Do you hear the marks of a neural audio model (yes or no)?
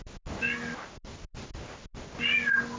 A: no